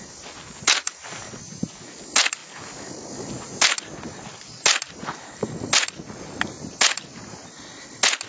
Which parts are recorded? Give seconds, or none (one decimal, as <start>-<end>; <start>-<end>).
0.0-8.3